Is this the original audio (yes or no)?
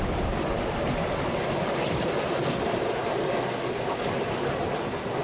yes